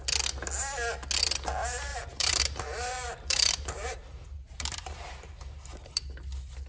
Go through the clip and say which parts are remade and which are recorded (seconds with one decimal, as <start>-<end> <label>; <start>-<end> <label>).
0.0-1.9 recorded; 1.9-5.9 remade; 5.9-6.7 recorded